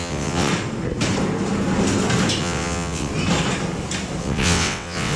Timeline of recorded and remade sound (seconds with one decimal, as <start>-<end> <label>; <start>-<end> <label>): 0.0-0.5 remade; 0.5-2.4 recorded; 2.4-3.1 remade; 3.1-4.2 recorded; 4.2-5.2 remade

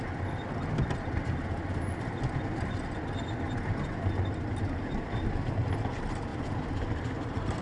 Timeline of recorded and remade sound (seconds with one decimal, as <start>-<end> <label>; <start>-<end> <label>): 0.0-7.6 recorded

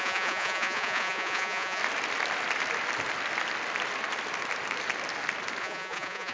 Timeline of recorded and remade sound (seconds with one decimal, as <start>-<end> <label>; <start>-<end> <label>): 0.0-1.8 remade; 1.8-5.6 recorded; 5.6-6.3 remade

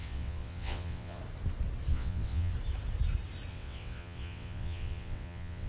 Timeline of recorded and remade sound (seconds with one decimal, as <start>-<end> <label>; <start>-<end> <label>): 0.0-1.2 remade; 1.2-1.9 recorded; 1.9-2.5 remade; 2.5-3.5 recorded; 3.5-5.7 remade

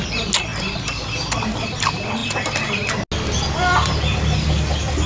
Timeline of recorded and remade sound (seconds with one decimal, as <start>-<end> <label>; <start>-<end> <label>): 0.0-5.1 recorded

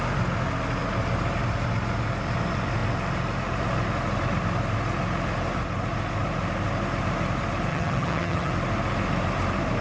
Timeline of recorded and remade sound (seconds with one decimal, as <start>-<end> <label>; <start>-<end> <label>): 0.0-7.7 recorded; 7.7-8.5 remade; 8.5-9.8 recorded

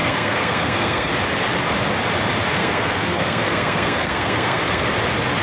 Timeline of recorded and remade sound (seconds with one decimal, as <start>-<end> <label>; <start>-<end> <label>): 0.0-1.1 remade; 1.1-2.6 recorded; 2.6-4.8 remade; 4.8-5.4 recorded

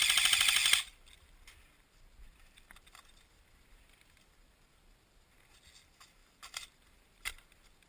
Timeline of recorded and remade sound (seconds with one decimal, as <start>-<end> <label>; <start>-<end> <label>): 0.0-7.9 recorded